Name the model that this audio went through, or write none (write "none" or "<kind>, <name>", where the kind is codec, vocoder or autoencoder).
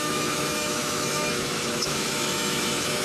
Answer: autoencoder, DAC-VAE